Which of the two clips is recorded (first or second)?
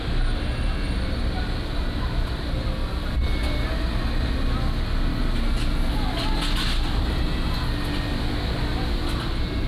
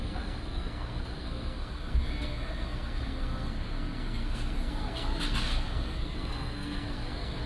first